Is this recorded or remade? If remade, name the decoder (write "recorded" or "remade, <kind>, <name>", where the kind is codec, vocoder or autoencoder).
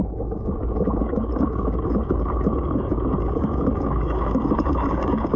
remade, codec, DAC